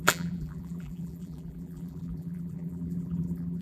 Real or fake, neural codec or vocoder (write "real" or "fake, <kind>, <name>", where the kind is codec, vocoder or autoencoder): fake, vocoder, BigVGAN v2